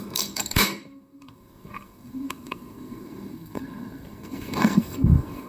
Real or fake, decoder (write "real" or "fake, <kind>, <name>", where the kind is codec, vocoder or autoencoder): fake, codec, SNAC